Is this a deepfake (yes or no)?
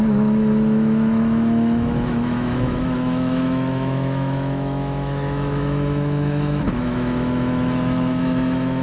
yes